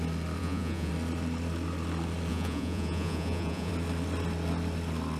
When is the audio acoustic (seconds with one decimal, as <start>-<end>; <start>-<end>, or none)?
0.0-0.4; 0.9-2.3; 3.7-5.2